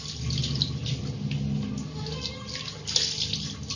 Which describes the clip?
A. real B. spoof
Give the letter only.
A